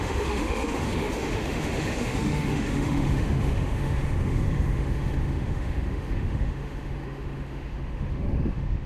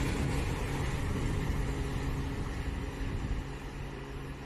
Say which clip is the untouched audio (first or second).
second